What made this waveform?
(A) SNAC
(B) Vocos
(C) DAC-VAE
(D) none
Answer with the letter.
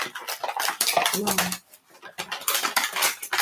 D